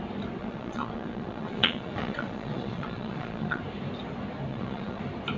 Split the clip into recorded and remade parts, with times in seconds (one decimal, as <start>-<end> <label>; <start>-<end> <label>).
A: 0.0-0.4 recorded; 0.4-3.6 remade; 3.6-4.5 recorded; 4.5-5.0 remade; 5.0-5.4 recorded